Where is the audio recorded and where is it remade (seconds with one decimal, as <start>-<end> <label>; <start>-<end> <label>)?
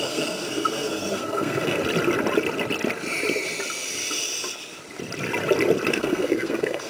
0.0-1.8 remade; 1.8-5.9 recorded; 5.9-6.9 remade